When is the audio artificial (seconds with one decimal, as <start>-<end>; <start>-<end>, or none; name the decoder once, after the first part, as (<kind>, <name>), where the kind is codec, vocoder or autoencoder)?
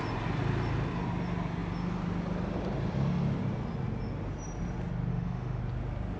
5.1-5.6 (autoencoder, DAC-VAE)